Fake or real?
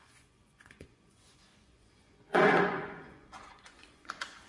fake